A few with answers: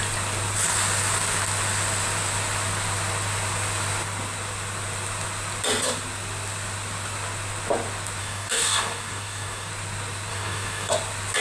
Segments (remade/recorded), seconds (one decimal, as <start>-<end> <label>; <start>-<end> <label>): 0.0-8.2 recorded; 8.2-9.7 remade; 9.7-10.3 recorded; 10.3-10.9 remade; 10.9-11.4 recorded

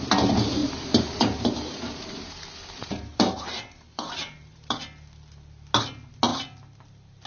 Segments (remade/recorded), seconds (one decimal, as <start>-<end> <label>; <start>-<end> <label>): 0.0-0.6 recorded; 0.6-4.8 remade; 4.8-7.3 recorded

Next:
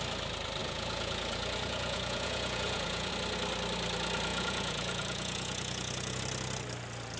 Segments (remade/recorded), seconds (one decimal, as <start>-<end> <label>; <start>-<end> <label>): 0.0-0.6 recorded; 0.6-3.1 remade; 3.1-4.3 recorded; 4.3-6.2 remade; 6.2-7.2 recorded